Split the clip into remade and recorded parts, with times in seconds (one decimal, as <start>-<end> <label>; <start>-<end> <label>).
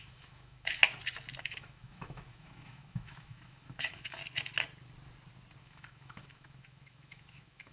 0.0-0.8 remade; 0.8-1.4 recorded; 1.4-4.2 remade; 4.2-5.6 recorded; 5.6-7.7 remade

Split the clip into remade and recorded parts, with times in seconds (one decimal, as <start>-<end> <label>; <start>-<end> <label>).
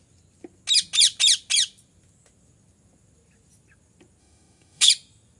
0.0-4.2 recorded; 4.2-4.9 remade; 4.9-5.4 recorded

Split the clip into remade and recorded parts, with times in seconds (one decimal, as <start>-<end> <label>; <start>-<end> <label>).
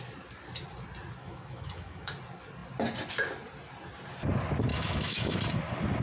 0.0-1.2 recorded; 1.2-2.1 remade; 2.1-4.7 recorded; 4.7-5.4 remade; 5.4-6.0 recorded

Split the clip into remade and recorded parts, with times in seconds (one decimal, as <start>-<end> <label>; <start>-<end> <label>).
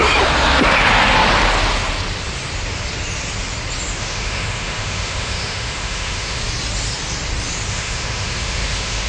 0.0-4.0 recorded; 4.0-6.4 remade; 6.4-7.7 recorded; 7.7-9.1 remade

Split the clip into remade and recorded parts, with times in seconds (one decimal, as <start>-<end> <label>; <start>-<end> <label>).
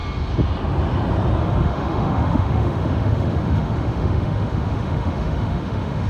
0.0-1.4 recorded; 1.4-6.1 remade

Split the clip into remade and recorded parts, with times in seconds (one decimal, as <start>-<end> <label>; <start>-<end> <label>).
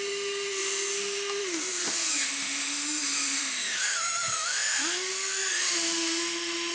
0.0-6.7 remade